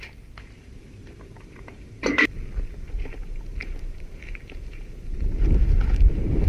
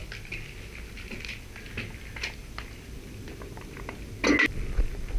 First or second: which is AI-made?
first